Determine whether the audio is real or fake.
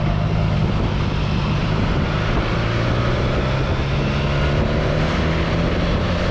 real